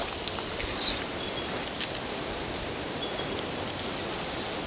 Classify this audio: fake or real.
real